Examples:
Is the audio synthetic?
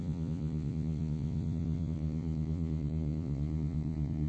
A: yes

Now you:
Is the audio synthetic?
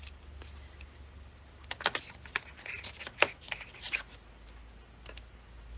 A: no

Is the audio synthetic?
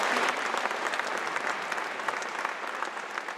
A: no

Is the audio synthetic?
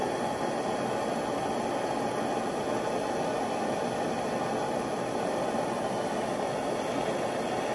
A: no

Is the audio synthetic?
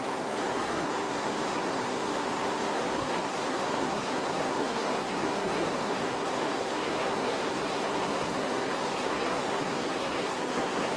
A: yes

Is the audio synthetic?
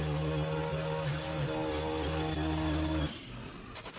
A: no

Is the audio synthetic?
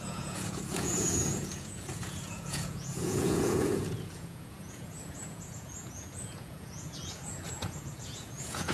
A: yes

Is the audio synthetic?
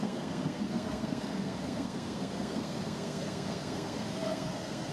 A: yes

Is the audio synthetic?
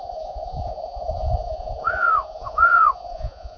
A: yes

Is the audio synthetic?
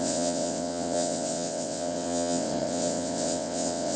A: yes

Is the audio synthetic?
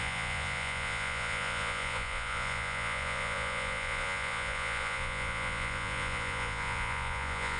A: yes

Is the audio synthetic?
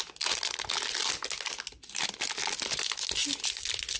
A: no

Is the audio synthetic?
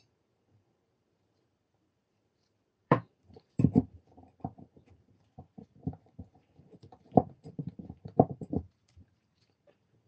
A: yes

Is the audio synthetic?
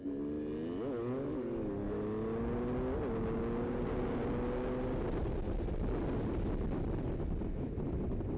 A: no